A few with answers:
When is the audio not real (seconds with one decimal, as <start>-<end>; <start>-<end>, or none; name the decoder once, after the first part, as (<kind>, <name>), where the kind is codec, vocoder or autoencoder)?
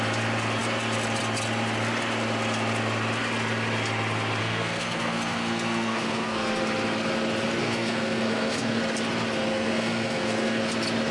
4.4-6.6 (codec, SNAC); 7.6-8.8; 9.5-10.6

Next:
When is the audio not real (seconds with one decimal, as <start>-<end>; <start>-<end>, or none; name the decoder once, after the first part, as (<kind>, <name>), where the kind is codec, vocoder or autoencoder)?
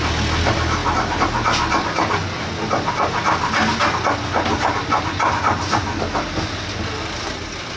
none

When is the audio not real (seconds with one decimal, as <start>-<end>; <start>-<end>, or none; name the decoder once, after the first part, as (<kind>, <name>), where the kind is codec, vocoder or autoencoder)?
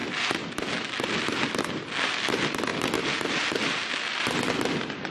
none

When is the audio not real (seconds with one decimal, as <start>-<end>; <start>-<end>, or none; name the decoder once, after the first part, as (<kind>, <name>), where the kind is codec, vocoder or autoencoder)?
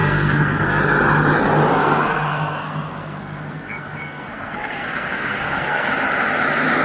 0.0-0.8 (codec, SNAC); 1.8-5.9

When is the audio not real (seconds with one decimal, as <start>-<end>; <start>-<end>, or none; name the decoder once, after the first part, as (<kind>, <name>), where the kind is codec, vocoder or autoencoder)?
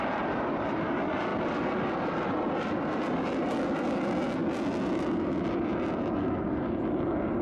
none